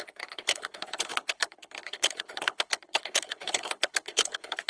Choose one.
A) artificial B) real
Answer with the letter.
A